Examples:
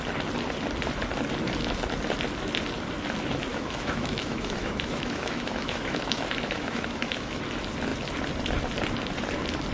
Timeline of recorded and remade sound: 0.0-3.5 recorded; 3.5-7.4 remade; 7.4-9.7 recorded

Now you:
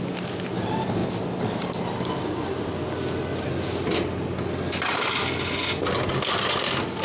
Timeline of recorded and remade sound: 0.0-7.0 recorded

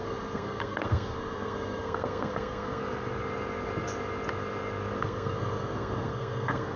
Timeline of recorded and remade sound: 0.0-2.8 remade; 2.8-5.0 recorded; 5.0-6.8 remade

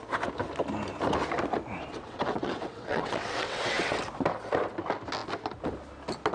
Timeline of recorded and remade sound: 0.0-1.9 recorded; 1.9-3.9 remade; 3.9-6.3 recorded

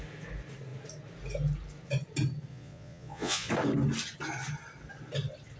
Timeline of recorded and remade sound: 0.0-2.5 recorded; 2.5-3.5 remade; 3.5-5.6 recorded

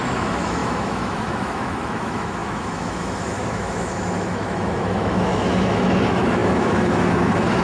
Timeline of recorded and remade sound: 0.0-7.6 remade